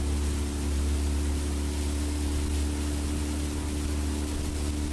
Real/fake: real